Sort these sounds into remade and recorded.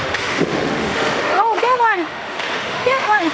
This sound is remade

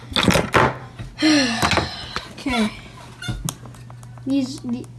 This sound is recorded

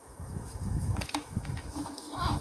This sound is remade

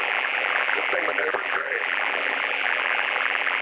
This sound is remade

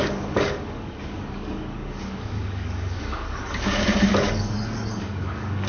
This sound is remade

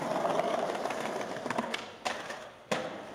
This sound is recorded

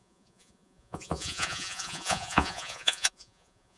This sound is remade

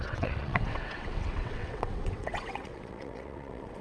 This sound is remade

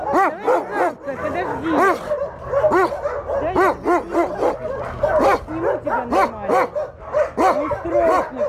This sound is recorded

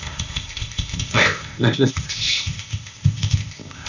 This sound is remade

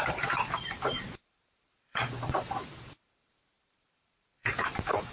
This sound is remade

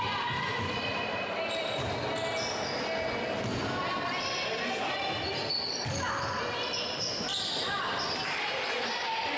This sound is recorded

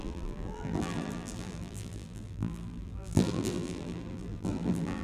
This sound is remade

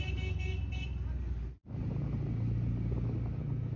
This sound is recorded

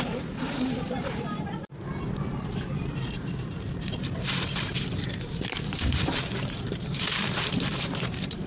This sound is remade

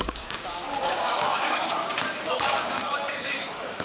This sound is remade